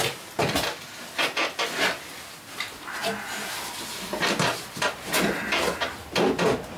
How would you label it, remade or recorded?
recorded